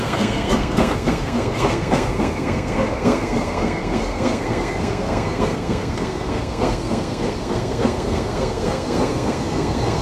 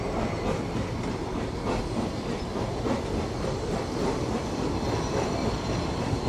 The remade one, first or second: first